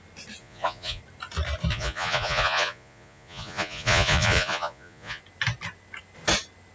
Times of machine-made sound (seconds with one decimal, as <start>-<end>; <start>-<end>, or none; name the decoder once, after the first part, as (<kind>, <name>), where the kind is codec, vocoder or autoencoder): 0.4-1.0 (vocoder, Vocos); 1.7-5.2